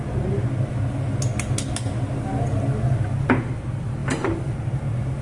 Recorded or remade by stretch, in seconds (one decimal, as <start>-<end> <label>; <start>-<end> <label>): 0.0-4.0 recorded; 4.0-4.6 remade; 4.6-5.2 recorded